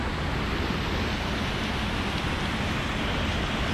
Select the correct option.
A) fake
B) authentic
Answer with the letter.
B